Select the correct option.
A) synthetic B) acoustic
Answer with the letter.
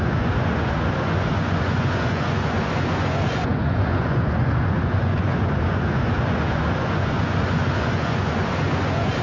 A